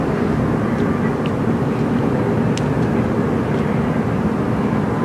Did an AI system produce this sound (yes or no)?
no